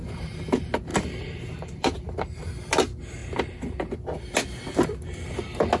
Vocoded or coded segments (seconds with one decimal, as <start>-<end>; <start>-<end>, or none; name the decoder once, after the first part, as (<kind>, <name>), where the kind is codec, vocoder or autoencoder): 0.9-2.5 (vocoder, BigVGAN v2)